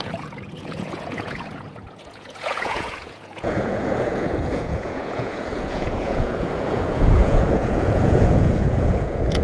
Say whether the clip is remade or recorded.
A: remade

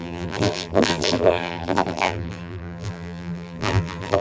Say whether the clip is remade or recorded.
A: remade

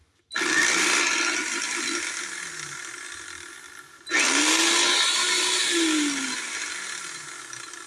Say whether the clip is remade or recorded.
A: recorded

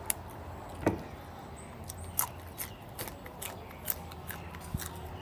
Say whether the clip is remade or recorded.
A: recorded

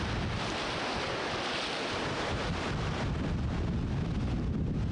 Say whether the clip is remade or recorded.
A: recorded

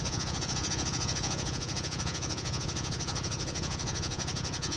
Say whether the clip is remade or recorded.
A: remade